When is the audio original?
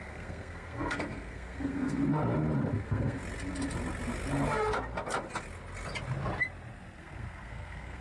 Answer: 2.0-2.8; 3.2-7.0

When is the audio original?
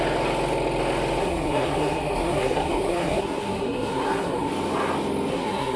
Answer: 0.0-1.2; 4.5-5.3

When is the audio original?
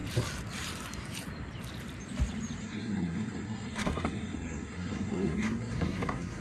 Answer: 0.0-2.6